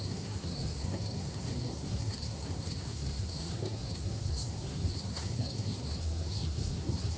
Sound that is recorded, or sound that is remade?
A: remade